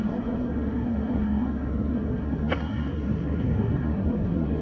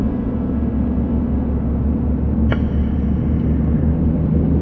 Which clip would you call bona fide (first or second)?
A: second